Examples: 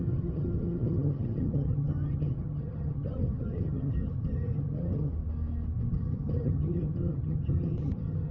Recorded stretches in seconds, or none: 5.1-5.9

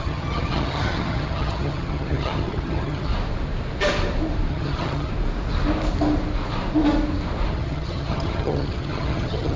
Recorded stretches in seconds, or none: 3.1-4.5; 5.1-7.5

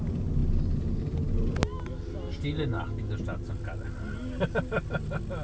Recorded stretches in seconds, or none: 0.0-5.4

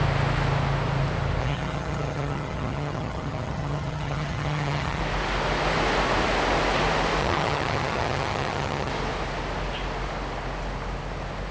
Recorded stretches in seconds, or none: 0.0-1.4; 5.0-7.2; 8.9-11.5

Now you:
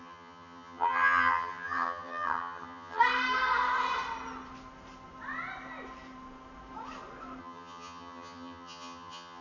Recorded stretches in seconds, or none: 3.0-7.4

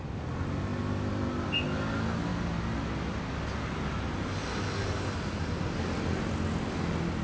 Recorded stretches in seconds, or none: 0.0-7.2